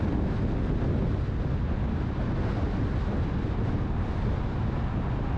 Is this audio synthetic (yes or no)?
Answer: no